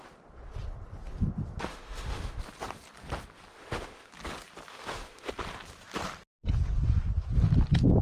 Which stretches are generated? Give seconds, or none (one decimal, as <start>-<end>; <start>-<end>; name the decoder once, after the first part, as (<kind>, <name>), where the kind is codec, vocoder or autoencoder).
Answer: 1.7-2.4 (autoencoder, DAC-VAE); 3.5-4.1; 4.7-5.3